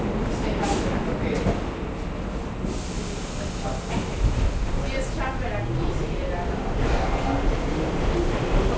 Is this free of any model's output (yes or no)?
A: yes